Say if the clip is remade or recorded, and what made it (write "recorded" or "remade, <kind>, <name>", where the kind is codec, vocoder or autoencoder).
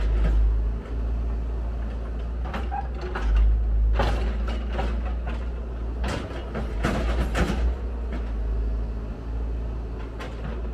recorded